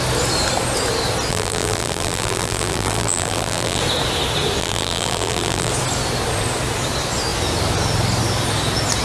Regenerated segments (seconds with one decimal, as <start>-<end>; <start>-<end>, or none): 1.3-3.8; 4.6-5.7